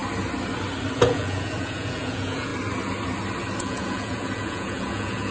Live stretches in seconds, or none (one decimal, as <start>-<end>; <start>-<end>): 0.0-0.9; 2.5-3.6